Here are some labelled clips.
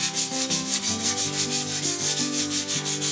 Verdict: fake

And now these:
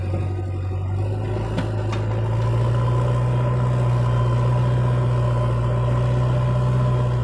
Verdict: real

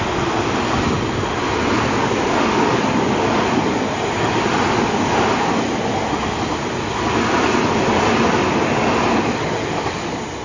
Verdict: real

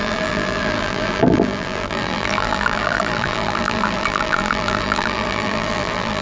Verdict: fake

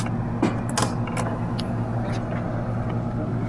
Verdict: real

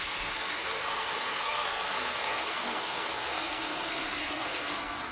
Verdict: fake